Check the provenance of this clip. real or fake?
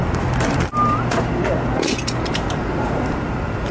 fake